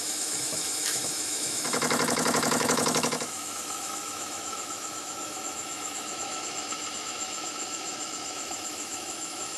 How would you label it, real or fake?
fake